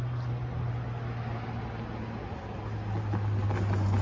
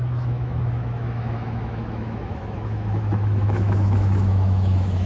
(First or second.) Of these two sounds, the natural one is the first